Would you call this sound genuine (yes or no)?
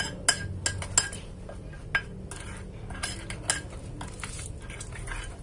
yes